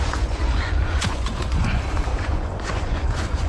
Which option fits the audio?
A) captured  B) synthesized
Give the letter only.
B